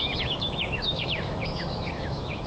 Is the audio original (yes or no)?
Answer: no